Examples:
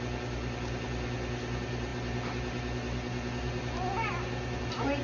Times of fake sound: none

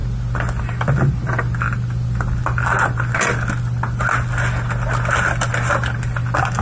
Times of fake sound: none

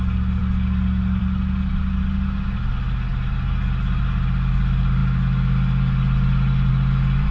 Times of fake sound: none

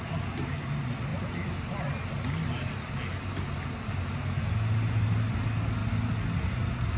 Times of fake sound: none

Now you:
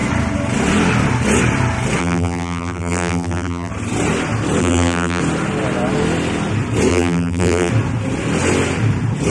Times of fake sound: 2.0-3.7 (vocoder, BigVGAN v2); 4.6-5.2; 6.9-7.7

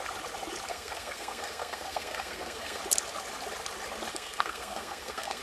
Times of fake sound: 0.7-2.8 (codec, SNAC); 4.1-5.4

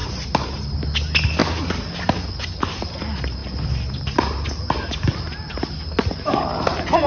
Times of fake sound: none

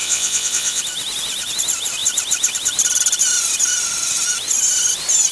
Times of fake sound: 0.0-0.8 (vocoder, WaveNeXt)